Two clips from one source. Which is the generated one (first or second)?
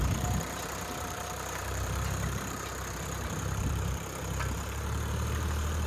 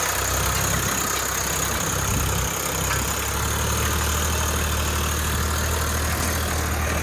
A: first